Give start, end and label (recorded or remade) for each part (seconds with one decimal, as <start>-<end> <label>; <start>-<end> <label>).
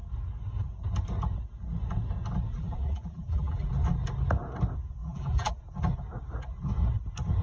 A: 0.0-2.5 recorded; 2.5-3.7 remade; 3.7-5.0 recorded; 5.0-5.6 remade; 5.6-7.4 recorded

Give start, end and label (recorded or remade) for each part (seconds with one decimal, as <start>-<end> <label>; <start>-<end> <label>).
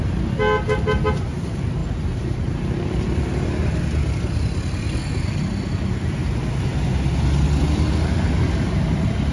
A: 0.0-9.3 recorded